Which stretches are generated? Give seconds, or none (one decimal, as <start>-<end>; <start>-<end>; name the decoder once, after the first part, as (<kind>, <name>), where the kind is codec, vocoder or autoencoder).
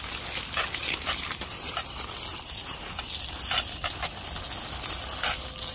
0.8-1.7 (vocoder, BigVGAN v2); 2.3-2.9